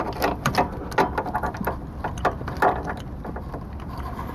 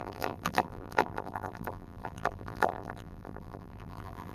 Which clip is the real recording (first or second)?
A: first